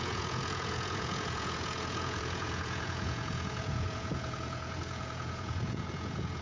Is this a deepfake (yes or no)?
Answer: yes